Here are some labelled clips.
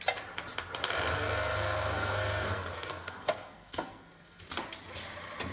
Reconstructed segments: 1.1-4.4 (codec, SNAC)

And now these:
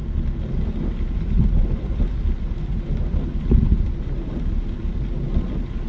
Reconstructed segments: none